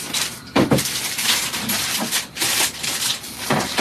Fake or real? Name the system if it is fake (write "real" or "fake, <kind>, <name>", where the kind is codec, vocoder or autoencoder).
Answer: fake, vocoder, BigVGAN v2